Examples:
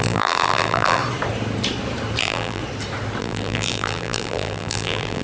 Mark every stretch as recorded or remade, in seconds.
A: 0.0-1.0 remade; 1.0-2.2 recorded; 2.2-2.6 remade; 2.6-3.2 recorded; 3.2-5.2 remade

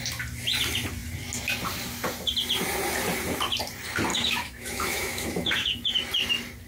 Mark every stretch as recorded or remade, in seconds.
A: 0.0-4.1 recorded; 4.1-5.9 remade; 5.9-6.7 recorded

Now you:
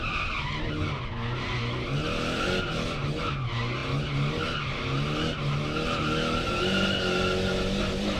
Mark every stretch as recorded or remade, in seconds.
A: 0.0-8.2 recorded

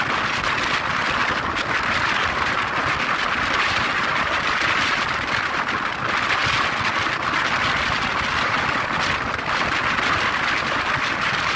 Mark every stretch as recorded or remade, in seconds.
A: 0.0-11.6 recorded

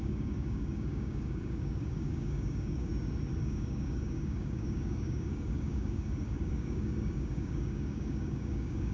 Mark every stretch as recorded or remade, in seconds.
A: 0.0-2.9 remade; 2.9-3.4 recorded; 3.4-8.9 remade

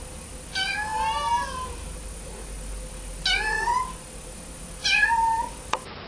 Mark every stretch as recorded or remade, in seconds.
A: 0.0-6.1 recorded

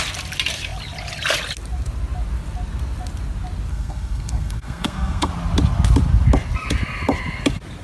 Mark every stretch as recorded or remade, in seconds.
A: 0.0-3.7 recorded; 3.7-5.3 remade; 5.3-7.8 recorded